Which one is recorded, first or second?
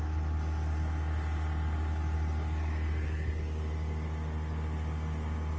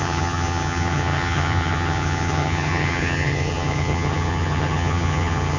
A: first